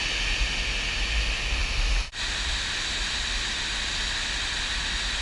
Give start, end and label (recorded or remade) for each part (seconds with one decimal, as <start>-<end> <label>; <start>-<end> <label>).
0.0-5.2 recorded